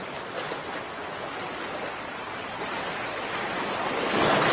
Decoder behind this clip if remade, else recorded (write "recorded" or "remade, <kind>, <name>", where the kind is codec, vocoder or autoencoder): recorded